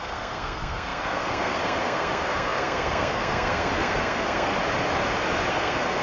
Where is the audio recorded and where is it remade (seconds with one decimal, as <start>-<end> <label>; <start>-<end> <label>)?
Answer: 0.0-4.5 remade; 4.5-5.5 recorded; 5.5-6.0 remade